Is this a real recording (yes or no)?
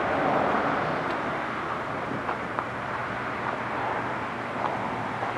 yes